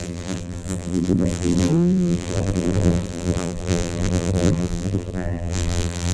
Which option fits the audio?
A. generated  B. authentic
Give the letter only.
A